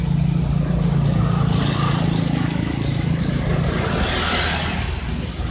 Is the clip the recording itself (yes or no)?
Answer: yes